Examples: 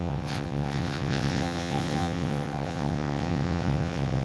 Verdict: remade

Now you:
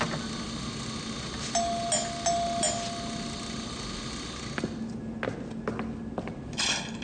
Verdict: recorded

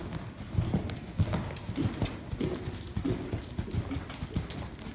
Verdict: recorded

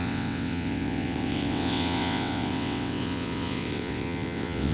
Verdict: remade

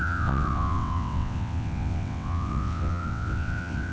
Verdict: remade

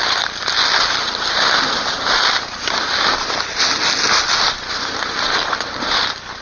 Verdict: recorded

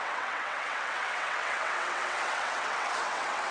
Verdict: remade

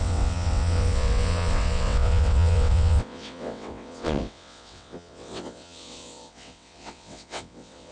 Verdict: remade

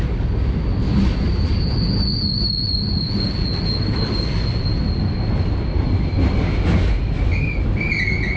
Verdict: recorded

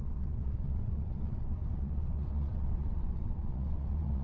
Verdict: remade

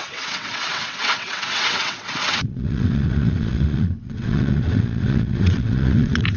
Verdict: remade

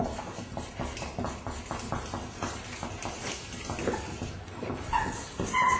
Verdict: recorded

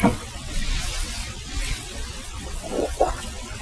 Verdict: remade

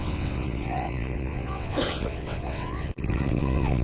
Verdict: remade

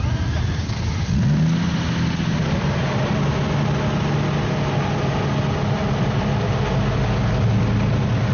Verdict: recorded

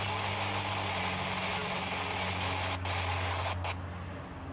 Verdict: recorded